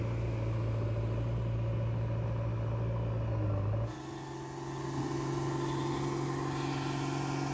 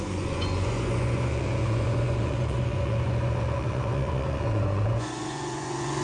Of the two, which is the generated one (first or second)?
second